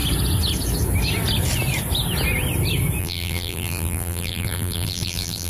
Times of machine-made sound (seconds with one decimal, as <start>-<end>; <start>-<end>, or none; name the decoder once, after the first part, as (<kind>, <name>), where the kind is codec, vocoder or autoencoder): 3.0-5.5 (vocoder, BigVGAN v2)